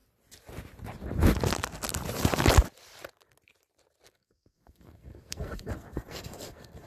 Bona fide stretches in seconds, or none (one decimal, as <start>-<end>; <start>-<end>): 0.0-4.1